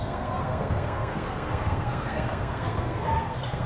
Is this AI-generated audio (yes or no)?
yes